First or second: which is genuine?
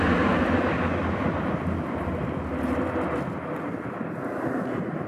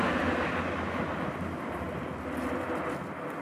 second